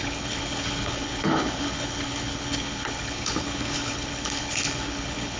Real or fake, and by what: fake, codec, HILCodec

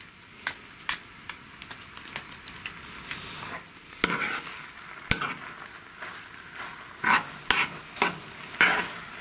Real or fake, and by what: real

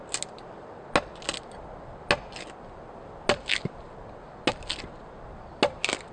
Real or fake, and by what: real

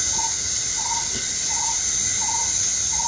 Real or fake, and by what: fake, vocoder, BigVGAN v2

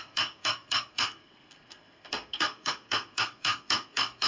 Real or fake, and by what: fake, codec, SNAC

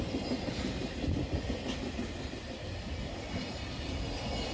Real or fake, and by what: real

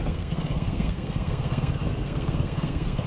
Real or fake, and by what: fake, codec, SNAC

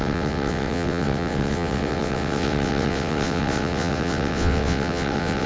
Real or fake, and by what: fake, vocoder, WaveNeXt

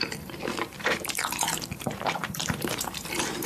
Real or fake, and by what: fake, vocoder, BigVGAN v2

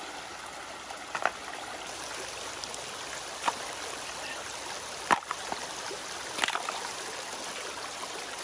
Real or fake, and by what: real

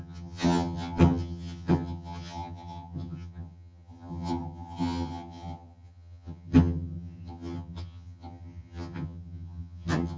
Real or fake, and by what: fake, vocoder, HiFi-GAN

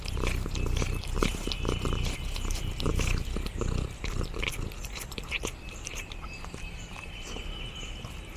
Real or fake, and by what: real